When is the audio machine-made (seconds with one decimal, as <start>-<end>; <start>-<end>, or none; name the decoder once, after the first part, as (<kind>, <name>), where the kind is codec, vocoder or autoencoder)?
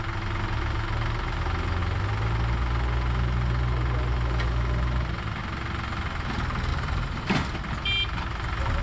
6.7-7.2 (vocoder, BigVGAN v2)